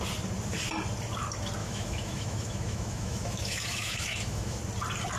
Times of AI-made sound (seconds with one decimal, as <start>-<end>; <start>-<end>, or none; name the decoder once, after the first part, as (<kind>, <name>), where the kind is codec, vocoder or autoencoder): 1.6-4.6 (autoencoder, DAC-VAE)